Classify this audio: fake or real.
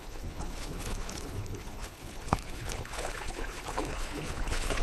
fake